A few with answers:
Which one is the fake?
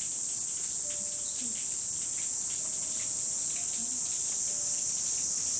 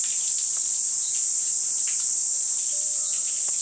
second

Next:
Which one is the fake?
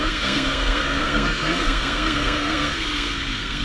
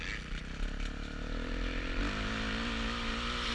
first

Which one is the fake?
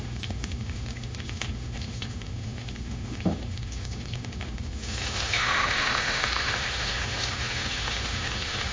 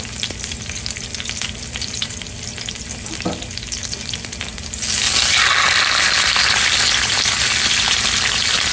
first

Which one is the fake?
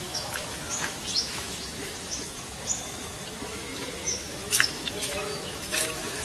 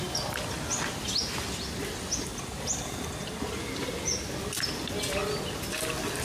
first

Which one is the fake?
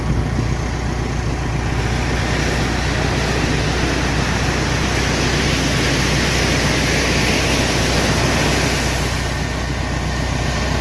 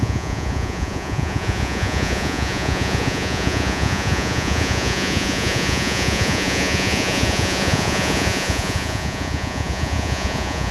second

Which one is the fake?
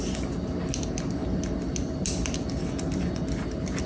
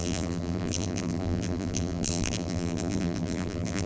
second